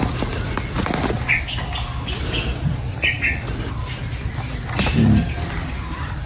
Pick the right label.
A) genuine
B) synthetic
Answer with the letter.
A